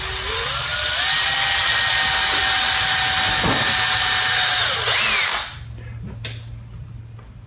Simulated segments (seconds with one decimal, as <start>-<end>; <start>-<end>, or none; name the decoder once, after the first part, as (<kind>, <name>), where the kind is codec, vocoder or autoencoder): none